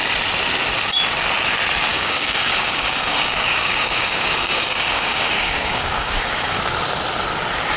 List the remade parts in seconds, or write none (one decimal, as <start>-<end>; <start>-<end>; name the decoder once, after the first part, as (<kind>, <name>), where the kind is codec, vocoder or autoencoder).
1.9-6.6 (codec, DAC)